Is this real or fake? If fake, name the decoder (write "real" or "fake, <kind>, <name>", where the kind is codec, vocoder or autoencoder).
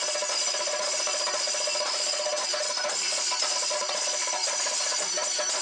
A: fake, vocoder, Vocos